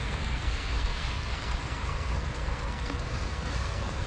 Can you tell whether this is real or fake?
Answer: fake